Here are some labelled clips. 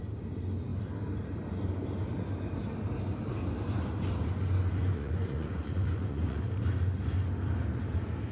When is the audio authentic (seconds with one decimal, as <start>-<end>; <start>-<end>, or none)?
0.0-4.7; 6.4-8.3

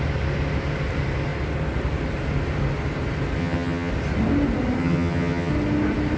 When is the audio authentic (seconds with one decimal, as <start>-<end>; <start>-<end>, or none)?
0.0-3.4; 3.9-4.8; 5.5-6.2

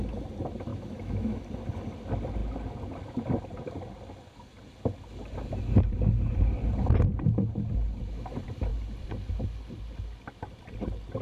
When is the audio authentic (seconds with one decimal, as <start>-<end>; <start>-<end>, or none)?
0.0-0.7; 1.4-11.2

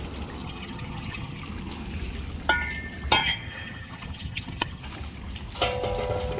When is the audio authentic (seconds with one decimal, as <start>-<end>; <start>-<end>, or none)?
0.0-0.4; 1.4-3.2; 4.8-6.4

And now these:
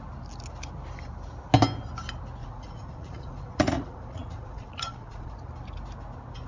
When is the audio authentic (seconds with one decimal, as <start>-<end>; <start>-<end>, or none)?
0.0-2.4; 5.5-6.5

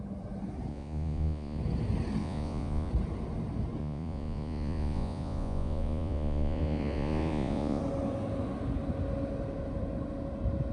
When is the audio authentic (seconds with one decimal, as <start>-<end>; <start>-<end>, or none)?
0.0-0.7; 1.6-2.2; 2.9-3.8; 7.8-10.7

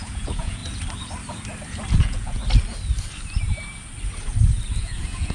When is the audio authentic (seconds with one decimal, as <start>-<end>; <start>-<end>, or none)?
0.6-1.9; 2.4-4.7